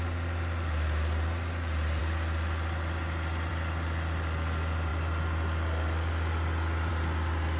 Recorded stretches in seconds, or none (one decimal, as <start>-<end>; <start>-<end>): 0.0-7.6